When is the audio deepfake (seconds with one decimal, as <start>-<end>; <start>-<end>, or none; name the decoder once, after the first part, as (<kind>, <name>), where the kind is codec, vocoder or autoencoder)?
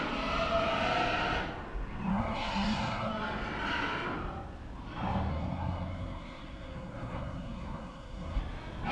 2.1-3.1 (codec, SNAC); 5.3-8.4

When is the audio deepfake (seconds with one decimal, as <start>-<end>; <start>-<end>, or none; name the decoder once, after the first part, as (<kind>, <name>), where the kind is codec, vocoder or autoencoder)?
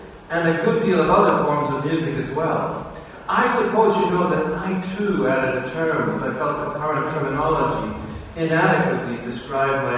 4.0-4.8 (vocoder, BigVGAN v2); 6.6-7.2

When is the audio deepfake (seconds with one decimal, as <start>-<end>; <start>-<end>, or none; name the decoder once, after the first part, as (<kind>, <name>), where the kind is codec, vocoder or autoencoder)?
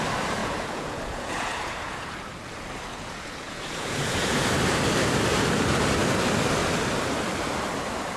0.4-2.2 (vocoder, Vocos); 2.9-4.5